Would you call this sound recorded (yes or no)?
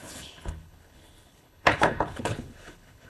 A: no